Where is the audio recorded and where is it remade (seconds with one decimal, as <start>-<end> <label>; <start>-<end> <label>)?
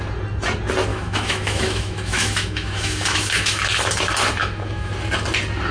0.0-0.9 recorded; 0.9-3.6 remade; 3.6-4.4 recorded; 4.4-4.9 remade; 4.9-5.7 recorded